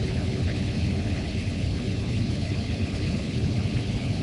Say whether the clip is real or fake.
fake